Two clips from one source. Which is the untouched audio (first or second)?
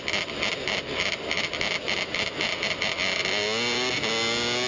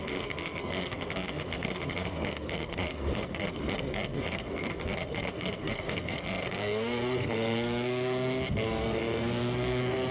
first